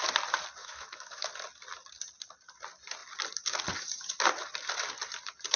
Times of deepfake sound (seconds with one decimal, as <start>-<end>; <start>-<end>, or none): 0.6-1.3